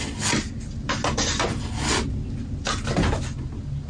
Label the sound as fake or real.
real